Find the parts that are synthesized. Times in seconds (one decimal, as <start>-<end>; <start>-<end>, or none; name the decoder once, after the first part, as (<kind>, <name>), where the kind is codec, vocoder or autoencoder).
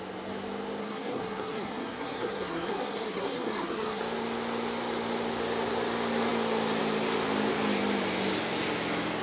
0.8-4.0 (codec, SNAC)